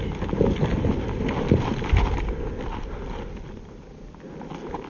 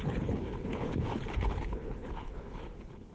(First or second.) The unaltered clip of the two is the first